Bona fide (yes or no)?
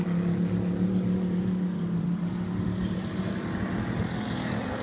yes